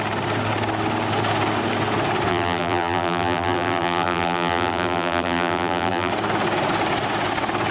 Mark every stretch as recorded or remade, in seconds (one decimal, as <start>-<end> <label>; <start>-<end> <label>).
0.0-2.3 recorded; 2.3-6.1 remade; 6.1-7.7 recorded